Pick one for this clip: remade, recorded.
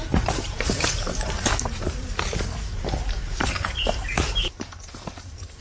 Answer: remade